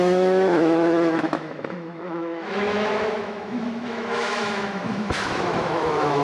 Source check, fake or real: fake